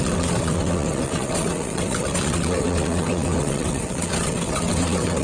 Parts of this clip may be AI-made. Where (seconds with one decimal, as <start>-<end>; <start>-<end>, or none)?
0.0-5.2